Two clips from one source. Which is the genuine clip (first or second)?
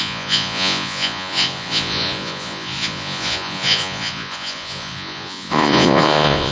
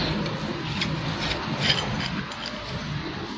second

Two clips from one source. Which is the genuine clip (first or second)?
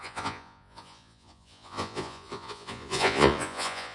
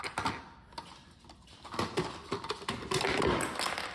second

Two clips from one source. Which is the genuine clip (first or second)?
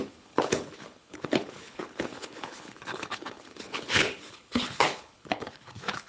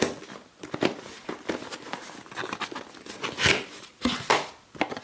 second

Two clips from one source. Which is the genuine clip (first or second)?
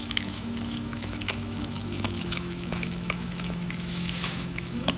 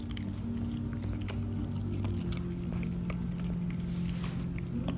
second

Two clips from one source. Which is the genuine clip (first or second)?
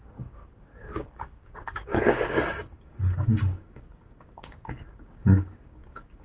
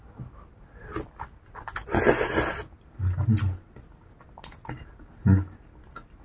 second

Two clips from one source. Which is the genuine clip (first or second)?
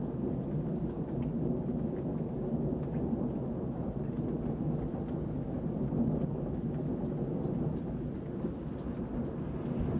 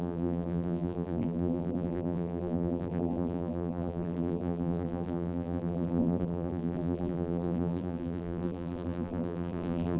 first